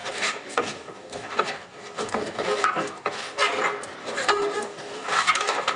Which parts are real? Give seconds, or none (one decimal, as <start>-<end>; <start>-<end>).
3.5-4.0

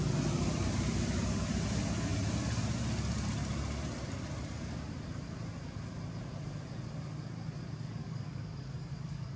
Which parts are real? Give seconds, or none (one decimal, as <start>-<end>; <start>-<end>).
0.0-8.0

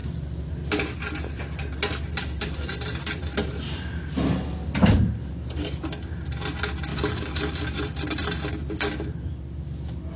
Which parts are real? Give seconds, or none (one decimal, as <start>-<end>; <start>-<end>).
0.0-10.2

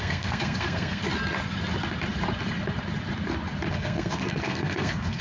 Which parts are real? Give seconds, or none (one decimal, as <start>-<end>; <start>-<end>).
1.0-3.7

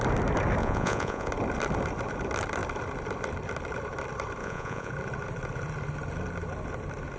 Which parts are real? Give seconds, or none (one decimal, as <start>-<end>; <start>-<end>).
0.0-0.6; 1.3-4.4; 4.9-7.2

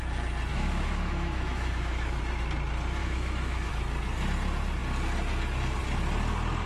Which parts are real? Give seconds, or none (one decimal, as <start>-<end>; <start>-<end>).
0.0-0.5; 2.2-3.0; 3.7-6.7